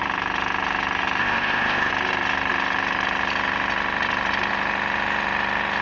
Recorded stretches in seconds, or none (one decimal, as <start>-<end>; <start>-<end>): 0.0-1.2; 1.9-5.8